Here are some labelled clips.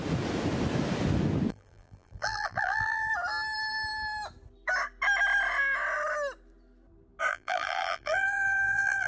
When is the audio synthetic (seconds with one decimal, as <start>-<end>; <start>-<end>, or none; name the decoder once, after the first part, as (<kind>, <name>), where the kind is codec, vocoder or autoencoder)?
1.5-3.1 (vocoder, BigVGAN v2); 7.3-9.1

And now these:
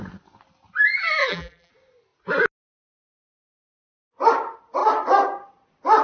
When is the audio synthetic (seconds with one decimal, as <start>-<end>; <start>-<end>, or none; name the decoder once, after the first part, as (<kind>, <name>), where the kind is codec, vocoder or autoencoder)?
1.2-1.7 (vocoder, BigVGAN v2)

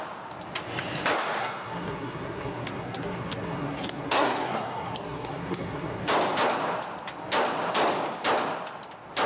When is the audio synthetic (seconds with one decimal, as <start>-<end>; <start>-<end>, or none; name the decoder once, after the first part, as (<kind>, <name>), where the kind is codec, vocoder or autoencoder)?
1.4-6.0 (codec, SNAC)

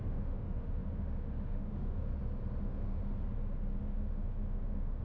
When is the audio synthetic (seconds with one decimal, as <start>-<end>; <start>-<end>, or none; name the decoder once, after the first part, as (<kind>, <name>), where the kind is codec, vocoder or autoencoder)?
0.0-2.1 (autoencoder, DAC-VAE); 2.6-3.0; 3.8-5.0

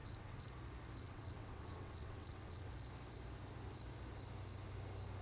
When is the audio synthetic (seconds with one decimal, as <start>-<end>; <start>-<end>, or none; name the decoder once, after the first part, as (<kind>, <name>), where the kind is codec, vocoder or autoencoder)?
0.0-0.5 (vocoder, WaveNeXt); 1.0-2.7

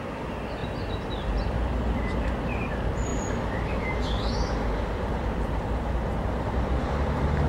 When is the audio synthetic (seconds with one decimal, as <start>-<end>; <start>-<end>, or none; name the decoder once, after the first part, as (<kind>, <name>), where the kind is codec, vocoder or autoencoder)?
none